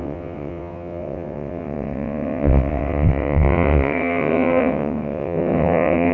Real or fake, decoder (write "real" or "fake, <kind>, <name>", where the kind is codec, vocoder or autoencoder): fake, vocoder, WaveNeXt